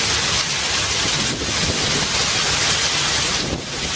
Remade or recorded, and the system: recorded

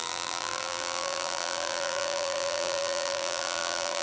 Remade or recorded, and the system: remade, vocoder, BigVGAN v2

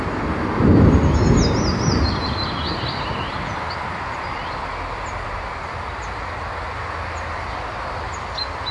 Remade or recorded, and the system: recorded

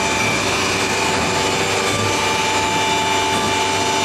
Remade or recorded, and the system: recorded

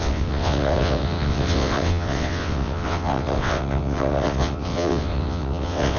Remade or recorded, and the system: remade, vocoder, WaveNeXt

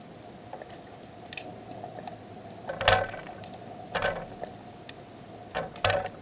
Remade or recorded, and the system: recorded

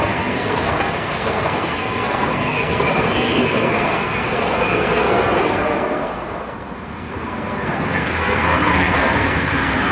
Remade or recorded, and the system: remade, codec, SNAC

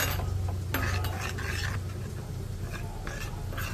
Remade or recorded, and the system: recorded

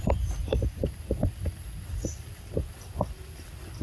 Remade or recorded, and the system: remade, vocoder, BigVGAN v2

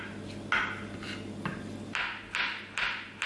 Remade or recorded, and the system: recorded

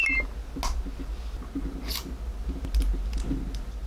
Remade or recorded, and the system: recorded